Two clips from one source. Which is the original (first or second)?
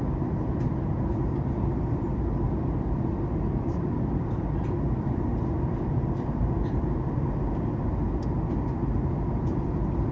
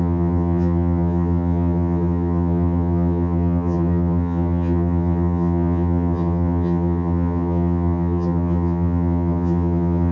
first